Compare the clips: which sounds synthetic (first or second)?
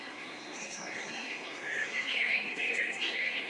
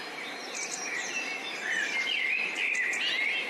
first